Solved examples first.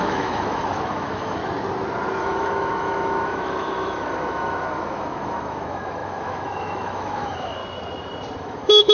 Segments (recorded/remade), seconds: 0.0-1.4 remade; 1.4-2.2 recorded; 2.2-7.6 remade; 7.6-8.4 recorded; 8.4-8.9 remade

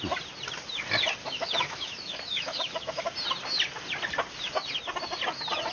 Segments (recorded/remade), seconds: 0.0-1.2 recorded; 1.2-3.0 remade; 3.0-5.7 recorded

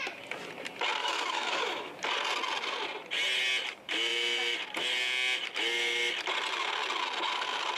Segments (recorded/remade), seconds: 0.0-1.0 recorded; 1.0-1.9 remade; 1.9-7.8 recorded

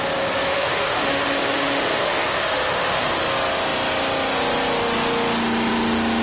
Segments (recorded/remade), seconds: 0.0-0.5 recorded; 0.5-3.1 remade; 3.1-6.2 recorded